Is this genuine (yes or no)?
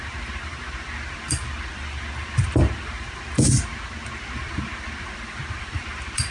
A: no